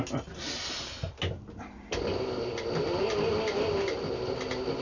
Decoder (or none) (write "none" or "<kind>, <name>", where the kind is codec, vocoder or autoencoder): none